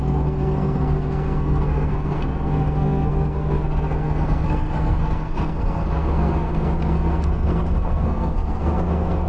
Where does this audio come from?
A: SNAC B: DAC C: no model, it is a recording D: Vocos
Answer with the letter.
A